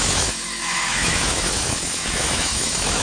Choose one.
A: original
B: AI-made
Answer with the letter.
B